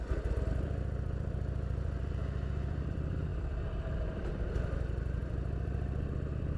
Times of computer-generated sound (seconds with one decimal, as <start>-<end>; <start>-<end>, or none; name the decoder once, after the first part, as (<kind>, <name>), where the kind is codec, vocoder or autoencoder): 0.0-6.6 (vocoder, BigVGAN v2)